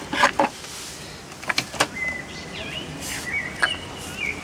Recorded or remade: recorded